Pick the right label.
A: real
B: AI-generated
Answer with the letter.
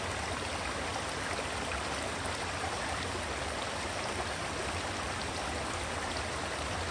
A